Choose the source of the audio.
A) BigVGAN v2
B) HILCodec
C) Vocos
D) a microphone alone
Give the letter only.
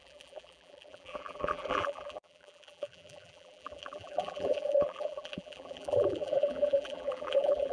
A